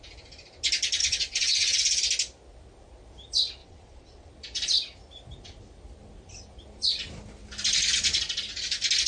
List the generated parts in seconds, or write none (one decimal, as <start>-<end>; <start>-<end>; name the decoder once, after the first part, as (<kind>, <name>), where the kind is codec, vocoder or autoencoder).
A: 1.0-2.0 (vocoder, WaveNeXt); 3.6-4.3